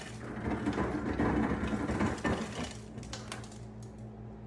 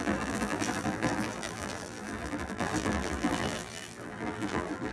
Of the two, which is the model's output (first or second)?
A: second